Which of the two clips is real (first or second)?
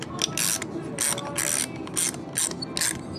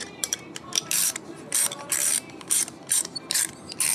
first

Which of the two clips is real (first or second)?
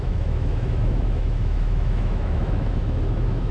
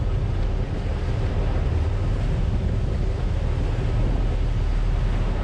second